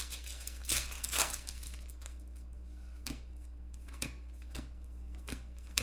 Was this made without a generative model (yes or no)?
no